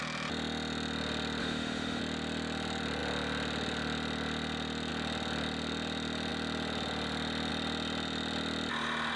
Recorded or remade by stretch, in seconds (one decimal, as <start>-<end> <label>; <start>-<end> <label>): 0.0-1.4 recorded; 1.4-2.0 remade; 2.0-9.2 recorded